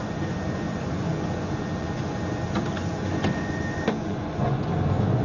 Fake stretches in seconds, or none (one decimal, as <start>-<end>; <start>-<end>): 0.0-5.2